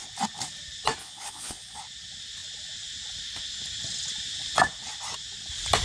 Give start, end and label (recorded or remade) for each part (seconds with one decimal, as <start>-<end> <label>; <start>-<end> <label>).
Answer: 0.0-1.0 recorded; 1.0-1.8 remade; 1.8-5.8 recorded